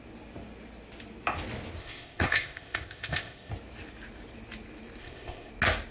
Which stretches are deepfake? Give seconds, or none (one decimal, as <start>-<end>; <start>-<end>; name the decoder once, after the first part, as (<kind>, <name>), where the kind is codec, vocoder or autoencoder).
1.8-3.5 (codec, ZipCodec); 5.0-5.5